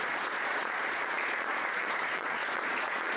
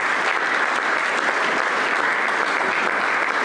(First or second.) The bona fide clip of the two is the second